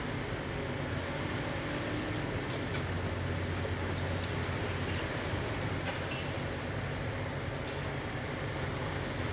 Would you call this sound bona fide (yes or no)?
yes